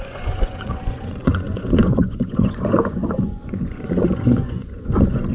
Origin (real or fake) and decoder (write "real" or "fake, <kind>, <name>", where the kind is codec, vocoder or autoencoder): fake, vocoder, Vocos